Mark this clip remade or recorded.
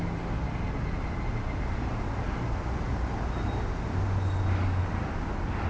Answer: recorded